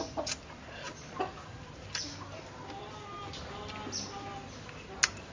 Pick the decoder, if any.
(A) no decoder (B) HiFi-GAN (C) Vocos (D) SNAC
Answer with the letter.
A